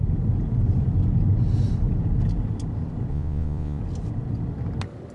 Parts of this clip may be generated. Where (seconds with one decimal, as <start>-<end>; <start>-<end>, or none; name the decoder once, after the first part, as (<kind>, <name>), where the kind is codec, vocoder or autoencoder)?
3.1-3.8 (vocoder, Vocos)